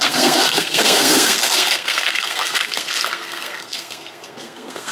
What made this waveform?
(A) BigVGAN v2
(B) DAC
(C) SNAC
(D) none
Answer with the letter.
C